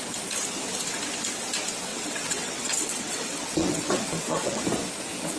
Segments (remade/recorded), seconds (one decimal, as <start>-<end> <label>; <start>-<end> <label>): 0.0-1.9 recorded; 1.9-4.6 remade; 4.6-5.4 recorded